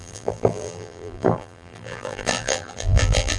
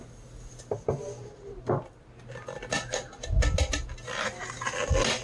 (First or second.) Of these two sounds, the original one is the second